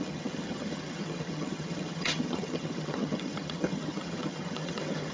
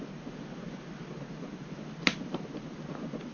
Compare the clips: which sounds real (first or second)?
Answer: second